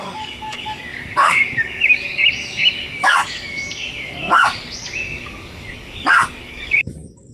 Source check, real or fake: fake